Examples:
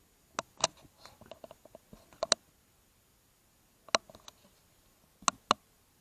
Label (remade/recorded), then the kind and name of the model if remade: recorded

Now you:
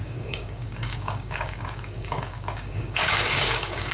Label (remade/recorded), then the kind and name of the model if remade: remade, codec, DAC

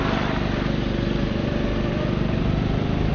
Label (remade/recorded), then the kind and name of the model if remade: recorded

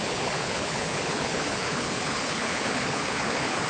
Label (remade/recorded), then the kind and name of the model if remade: remade, codec, HILCodec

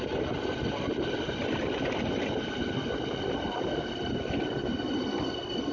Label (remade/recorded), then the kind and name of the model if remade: recorded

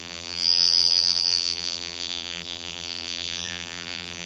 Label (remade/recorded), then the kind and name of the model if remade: remade, vocoder, BigVGAN v2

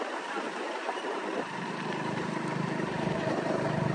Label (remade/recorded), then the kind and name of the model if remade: remade, vocoder, BigVGAN v2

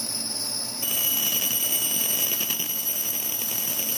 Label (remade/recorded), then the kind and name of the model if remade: remade, vocoder, BigVGAN v2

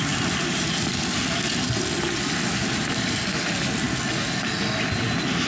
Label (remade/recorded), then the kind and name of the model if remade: recorded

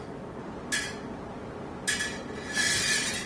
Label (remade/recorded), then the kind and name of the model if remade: recorded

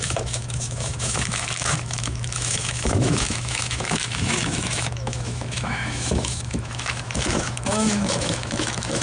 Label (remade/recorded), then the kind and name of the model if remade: remade, autoencoder, DAC-VAE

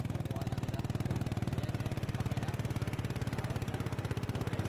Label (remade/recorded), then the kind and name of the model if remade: recorded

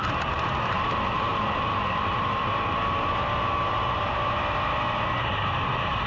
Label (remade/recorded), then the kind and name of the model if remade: remade, vocoder, BigVGAN v2